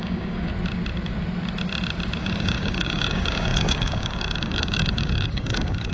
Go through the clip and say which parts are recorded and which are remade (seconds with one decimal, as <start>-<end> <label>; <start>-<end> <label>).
0.0-0.5 remade; 0.5-2.2 recorded; 2.2-5.9 remade